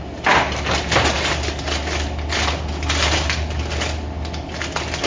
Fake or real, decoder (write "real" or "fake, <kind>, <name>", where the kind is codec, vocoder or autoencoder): real